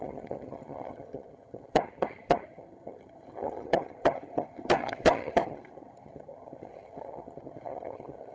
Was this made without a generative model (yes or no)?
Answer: no